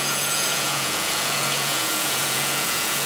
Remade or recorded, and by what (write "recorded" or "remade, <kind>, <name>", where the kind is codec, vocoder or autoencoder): remade, vocoder, Vocos